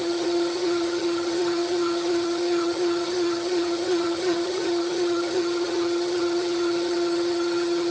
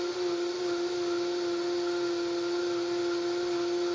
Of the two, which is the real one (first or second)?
second